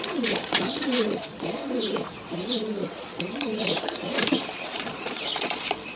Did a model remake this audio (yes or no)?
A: yes